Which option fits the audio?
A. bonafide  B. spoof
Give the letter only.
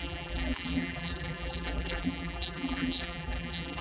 B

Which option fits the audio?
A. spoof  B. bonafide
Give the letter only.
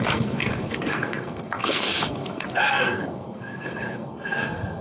A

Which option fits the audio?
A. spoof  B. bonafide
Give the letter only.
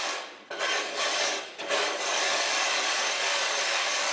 A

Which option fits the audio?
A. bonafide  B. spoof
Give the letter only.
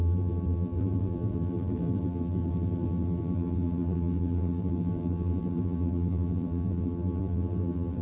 B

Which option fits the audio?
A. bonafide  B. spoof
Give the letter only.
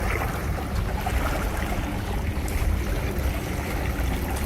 A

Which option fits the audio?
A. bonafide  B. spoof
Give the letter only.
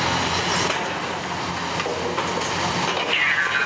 A